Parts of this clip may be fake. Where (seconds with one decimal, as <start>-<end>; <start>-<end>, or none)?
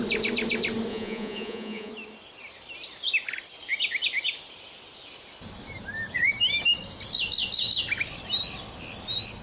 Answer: 0.9-1.9